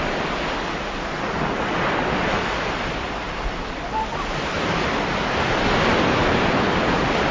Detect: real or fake real